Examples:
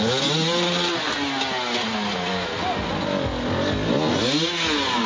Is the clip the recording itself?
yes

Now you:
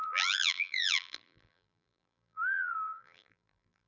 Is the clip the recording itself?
no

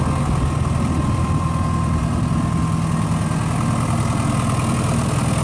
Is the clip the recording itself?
yes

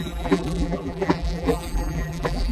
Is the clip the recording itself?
no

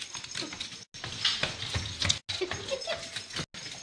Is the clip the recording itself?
yes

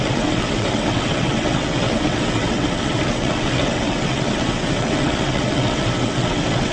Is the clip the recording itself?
no